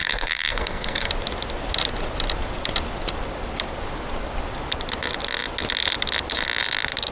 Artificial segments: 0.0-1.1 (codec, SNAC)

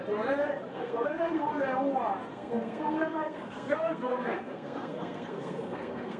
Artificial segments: 0.7-1.5 (codec, SNAC); 2.3-6.2

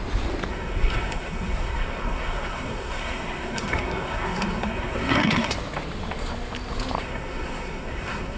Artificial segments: 0.5-5.5 (codec, SNAC); 7.0-8.4

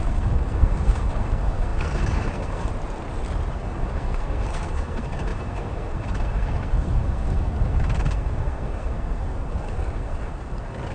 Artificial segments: 0.0-2.7 (codec, SNAC); 3.5-10.9

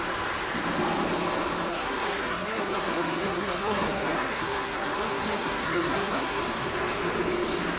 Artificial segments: 1.7-6.4 (codec, SNAC)